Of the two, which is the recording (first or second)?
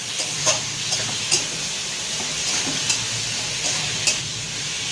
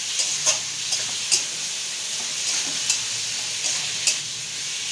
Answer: second